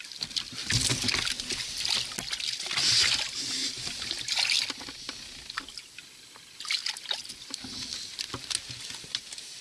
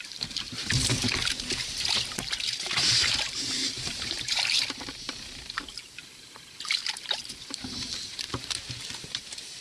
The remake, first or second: second